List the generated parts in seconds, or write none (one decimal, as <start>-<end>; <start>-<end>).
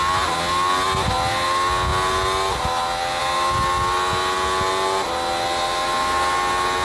none